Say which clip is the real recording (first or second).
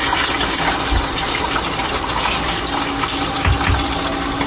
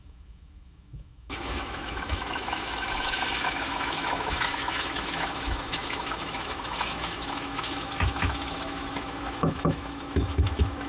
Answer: first